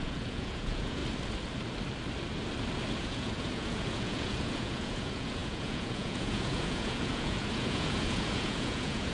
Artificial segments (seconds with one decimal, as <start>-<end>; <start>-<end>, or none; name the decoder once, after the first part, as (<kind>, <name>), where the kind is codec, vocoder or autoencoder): 0.0-1.0 (vocoder, Vocos); 3.0-9.1